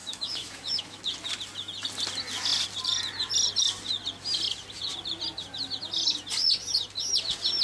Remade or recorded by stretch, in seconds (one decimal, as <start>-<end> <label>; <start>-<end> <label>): 0.0-1.0 remade; 1.0-7.6 recorded